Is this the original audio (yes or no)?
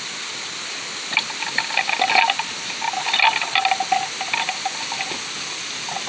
yes